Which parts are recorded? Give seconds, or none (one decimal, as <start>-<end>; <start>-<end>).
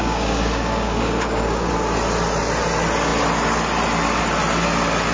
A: 1.7-5.1